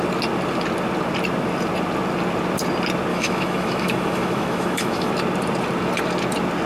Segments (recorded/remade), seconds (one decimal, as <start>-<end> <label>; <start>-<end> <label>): 0.0-3.1 recorded; 3.1-5.1 remade; 5.1-6.7 recorded